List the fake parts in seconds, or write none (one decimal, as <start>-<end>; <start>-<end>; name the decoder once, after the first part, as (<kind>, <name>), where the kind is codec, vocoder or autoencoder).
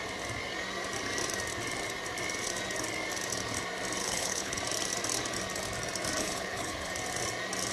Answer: 4.0-4.6 (codec, HILCodec); 6.2-6.9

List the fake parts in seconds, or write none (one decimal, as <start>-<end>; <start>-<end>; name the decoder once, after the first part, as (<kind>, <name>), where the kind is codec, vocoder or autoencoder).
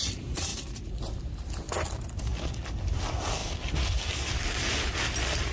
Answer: 0.0-3.4 (vocoder, BigVGAN v2); 4.3-5.5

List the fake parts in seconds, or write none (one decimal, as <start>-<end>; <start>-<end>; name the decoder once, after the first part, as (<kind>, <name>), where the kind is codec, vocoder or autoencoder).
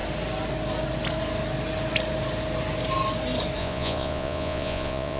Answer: 3.6-5.2 (vocoder, Vocos)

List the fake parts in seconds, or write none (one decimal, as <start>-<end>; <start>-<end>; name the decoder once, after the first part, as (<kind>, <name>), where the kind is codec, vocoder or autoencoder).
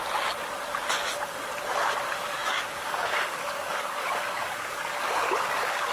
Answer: 2.3-5.9 (codec, DAC)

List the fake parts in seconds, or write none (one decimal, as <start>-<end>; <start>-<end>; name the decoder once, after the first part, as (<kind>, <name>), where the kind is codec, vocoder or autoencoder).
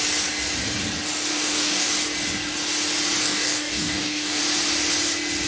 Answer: 1.3-1.9 (codec, DAC); 3.2-4.4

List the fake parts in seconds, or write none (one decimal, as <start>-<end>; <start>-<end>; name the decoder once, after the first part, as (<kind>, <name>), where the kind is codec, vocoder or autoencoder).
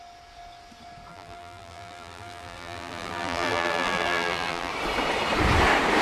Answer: 1.1-4.7 (vocoder, BigVGAN v2)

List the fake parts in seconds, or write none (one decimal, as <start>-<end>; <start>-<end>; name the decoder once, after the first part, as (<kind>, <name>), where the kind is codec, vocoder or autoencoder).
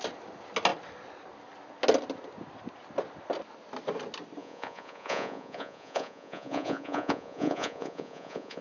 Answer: 4.4-8.6 (vocoder, Vocos)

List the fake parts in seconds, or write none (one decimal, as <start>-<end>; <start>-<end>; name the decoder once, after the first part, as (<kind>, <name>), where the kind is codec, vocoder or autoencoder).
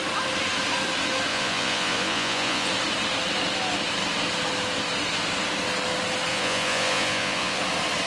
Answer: 1.3-2.7 (vocoder, Vocos); 6.3-7.6